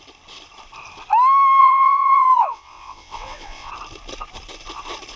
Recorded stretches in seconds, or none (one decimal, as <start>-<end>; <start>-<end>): 0.0-1.6; 3.7-5.2